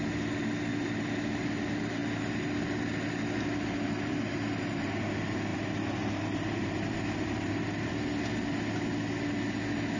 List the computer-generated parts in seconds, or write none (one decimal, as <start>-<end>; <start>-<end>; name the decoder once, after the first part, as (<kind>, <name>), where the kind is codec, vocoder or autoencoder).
5.5-7.9 (vocoder, BigVGAN v2)